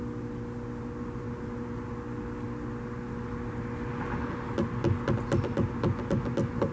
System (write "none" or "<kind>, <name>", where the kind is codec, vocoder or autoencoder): none